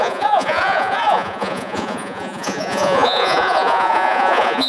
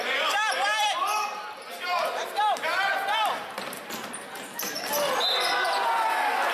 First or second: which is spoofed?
first